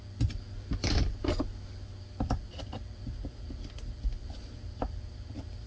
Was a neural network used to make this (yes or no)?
no